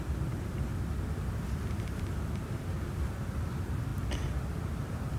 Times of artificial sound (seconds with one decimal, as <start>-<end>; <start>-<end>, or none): 0.0-0.7; 1.5-3.9; 4.6-5.2